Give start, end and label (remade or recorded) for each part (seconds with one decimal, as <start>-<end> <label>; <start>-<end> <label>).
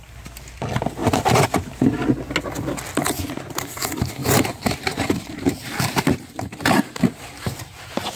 0.0-1.0 recorded; 1.0-2.3 remade; 2.3-4.2 recorded; 4.2-8.2 remade